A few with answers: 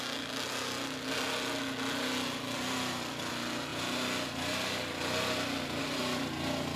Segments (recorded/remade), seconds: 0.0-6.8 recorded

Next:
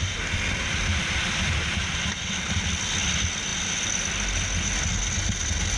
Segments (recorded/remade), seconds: 0.0-5.8 recorded